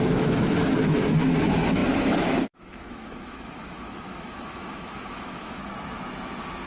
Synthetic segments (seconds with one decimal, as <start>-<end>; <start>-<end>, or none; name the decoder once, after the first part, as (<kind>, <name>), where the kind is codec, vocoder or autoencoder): 0.0-5.6 (autoencoder, DAC-VAE)